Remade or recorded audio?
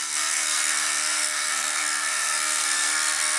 remade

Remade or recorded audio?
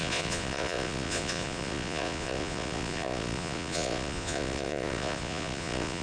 remade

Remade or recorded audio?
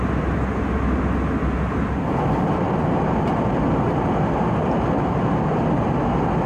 recorded